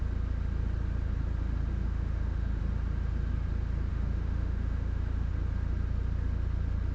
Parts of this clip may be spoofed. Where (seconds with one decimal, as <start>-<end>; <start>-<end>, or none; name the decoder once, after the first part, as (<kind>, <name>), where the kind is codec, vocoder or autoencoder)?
1.7-2.6 (autoencoder, DAC-VAE); 3.9-5.3